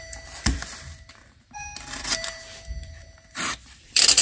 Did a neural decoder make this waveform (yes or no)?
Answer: yes